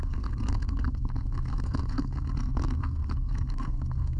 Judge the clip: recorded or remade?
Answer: remade